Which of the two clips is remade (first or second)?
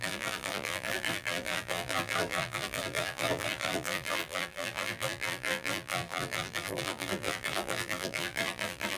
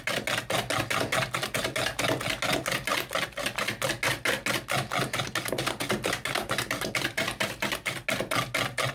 first